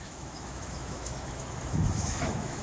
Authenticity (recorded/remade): remade